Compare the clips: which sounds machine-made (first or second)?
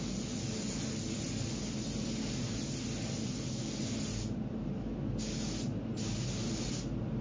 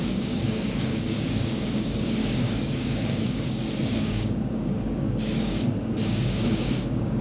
second